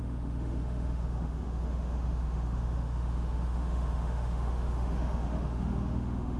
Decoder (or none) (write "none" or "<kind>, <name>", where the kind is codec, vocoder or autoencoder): autoencoder, DAC-VAE